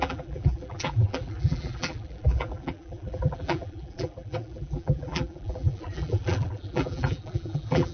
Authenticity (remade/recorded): remade